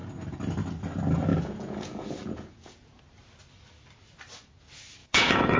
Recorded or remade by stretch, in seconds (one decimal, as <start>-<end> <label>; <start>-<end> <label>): 0.0-1.3 recorded; 1.3-3.0 remade; 3.0-5.0 recorded; 5.0-5.6 remade